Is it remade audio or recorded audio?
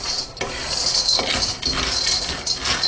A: recorded